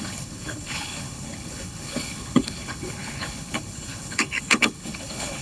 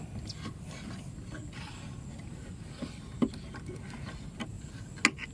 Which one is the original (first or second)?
second